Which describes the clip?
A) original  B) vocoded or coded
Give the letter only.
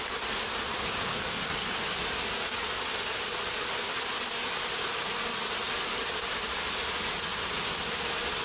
A